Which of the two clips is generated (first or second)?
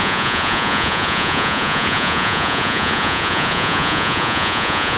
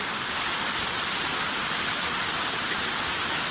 first